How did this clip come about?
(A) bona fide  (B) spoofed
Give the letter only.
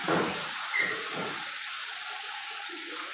B